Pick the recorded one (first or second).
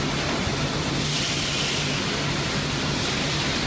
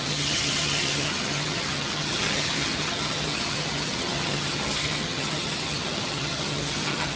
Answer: first